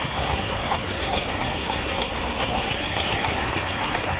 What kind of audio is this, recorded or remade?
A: remade